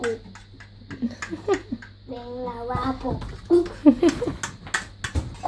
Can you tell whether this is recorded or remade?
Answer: recorded